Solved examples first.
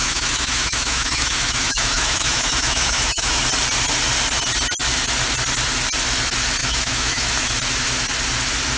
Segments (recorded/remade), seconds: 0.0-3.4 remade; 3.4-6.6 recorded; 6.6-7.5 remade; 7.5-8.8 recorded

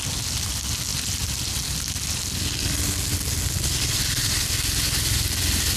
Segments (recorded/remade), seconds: 0.0-5.8 recorded

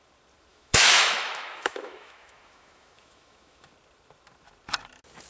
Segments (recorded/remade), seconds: 0.0-0.5 recorded; 0.5-3.7 remade; 3.7-5.3 recorded

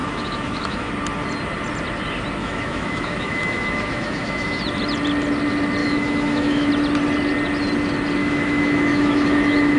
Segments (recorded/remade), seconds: 0.0-0.9 remade; 0.9-2.4 recorded; 2.4-4.6 remade; 4.6-5.8 recorded; 5.8-6.7 remade; 6.7-8.2 recorded; 8.2-9.8 remade

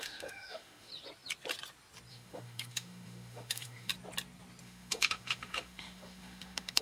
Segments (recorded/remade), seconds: 0.0-0.9 remade; 0.9-2.1 recorded; 2.1-3.9 remade; 3.9-4.6 recorded; 4.6-6.8 remade